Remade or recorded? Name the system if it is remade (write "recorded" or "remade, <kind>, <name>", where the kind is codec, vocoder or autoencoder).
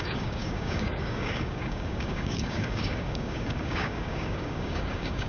remade, codec, DAC